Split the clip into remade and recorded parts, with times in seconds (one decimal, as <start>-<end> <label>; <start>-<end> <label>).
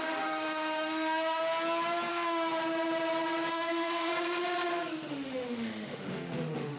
0.0-1.4 remade; 1.4-2.1 recorded; 2.1-2.5 remade; 2.5-3.5 recorded; 3.5-4.1 remade; 4.1-5.1 recorded; 5.1-6.8 remade